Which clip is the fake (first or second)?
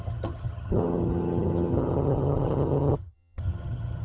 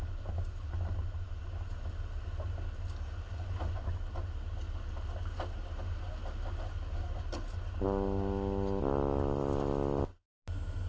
first